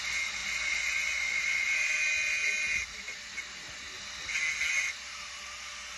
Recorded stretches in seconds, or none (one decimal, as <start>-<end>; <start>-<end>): 0.0-6.0